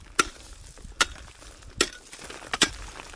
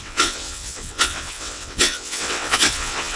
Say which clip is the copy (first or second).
second